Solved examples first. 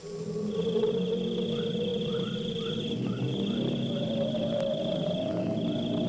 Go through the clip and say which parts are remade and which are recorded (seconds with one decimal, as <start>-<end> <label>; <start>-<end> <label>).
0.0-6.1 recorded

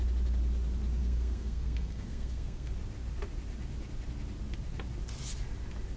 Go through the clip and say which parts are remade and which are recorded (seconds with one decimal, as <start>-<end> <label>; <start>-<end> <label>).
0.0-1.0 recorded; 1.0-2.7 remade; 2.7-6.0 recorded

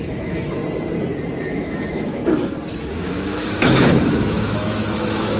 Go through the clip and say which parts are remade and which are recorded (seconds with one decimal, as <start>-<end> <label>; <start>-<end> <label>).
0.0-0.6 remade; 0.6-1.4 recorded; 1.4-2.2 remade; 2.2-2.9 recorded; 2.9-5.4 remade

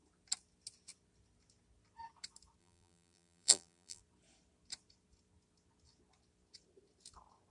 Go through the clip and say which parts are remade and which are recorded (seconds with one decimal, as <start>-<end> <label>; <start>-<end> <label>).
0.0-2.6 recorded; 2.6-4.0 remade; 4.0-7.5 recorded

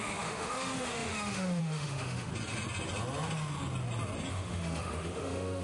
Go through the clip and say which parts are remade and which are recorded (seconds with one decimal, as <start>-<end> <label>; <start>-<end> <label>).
0.0-2.3 remade; 2.3-4.3 recorded; 4.3-5.6 remade

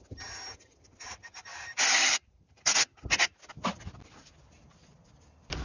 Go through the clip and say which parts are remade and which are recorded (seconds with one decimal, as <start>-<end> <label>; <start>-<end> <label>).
0.0-1.5 recorded; 1.5-2.6 remade; 2.6-5.6 recorded

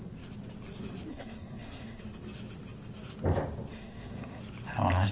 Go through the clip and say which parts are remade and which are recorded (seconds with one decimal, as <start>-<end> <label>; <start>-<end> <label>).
0.0-1.1 recorded; 1.1-2.0 remade; 2.0-3.7 recorded; 3.7-4.4 remade; 4.4-5.1 recorded